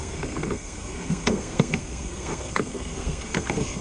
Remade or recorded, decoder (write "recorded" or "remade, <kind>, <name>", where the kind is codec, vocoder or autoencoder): remade, codec, SNAC